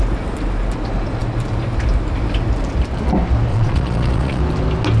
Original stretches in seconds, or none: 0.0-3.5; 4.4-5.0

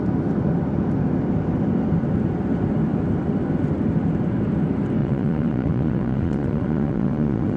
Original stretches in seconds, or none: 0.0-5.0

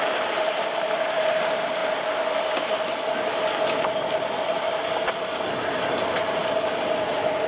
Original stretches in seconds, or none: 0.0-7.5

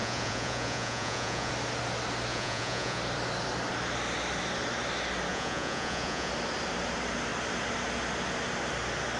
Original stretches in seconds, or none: 1.5-2.3; 3.0-5.3; 6.3-9.2